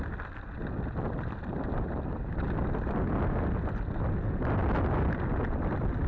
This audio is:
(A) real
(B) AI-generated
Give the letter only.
A